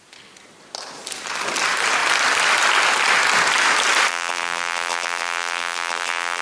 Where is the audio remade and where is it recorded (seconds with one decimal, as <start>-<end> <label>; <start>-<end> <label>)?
0.0-4.1 recorded; 4.1-6.4 remade